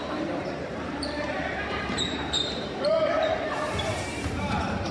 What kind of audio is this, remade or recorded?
remade